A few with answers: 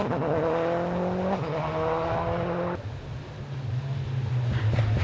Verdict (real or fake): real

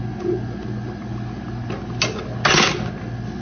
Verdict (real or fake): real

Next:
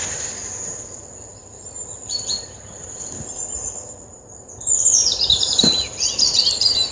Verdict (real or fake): fake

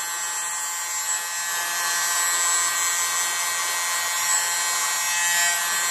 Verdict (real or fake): real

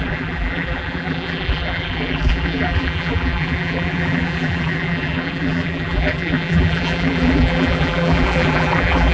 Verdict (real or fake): fake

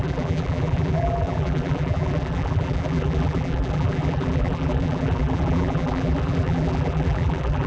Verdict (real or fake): fake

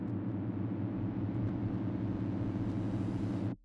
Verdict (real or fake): real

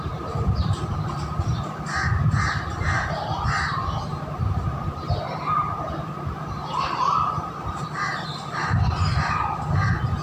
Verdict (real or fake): fake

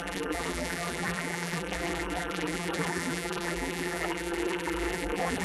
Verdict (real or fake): fake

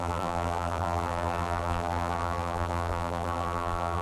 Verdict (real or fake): fake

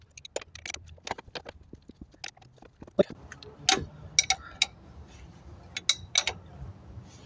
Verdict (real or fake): real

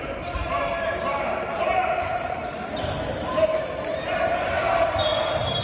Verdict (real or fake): fake